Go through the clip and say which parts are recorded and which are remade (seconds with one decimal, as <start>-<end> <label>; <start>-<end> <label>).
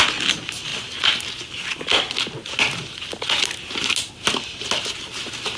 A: 0.0-5.6 recorded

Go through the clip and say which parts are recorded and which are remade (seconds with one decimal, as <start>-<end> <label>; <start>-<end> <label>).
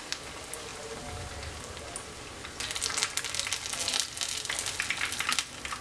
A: 0.0-5.8 recorded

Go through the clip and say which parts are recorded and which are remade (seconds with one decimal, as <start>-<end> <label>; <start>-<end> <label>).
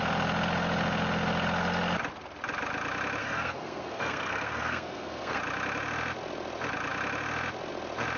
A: 0.0-3.2 recorded; 3.2-5.4 remade; 5.4-8.2 recorded